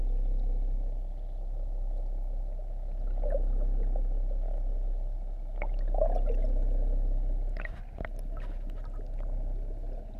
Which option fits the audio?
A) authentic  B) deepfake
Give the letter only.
A